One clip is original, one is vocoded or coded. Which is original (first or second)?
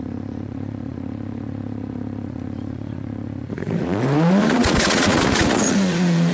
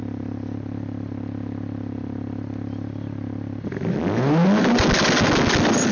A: second